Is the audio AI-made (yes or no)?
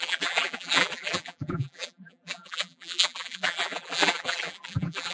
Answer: yes